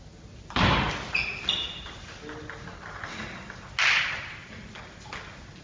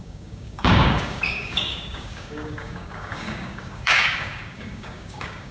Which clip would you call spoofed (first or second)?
second